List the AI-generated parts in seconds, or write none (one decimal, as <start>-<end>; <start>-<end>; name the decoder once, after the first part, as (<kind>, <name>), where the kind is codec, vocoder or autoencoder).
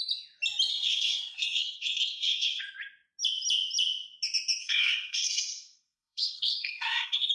0.7-2.6 (codec, SNAC); 4.6-7.3